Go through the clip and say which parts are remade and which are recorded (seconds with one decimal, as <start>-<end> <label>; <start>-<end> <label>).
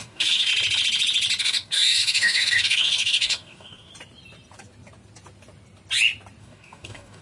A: 0.0-0.5 remade; 0.5-1.4 recorded; 1.4-3.9 remade; 3.9-6.4 recorded; 6.4-7.2 remade